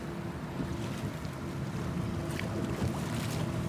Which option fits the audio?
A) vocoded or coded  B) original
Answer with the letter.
B